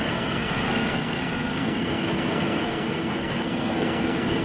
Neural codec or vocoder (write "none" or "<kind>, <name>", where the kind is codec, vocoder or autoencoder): codec, SNAC